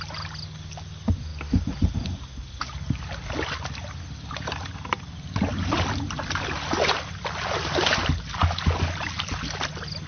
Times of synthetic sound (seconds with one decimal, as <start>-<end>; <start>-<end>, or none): none